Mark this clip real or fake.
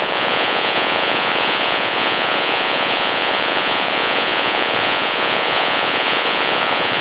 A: fake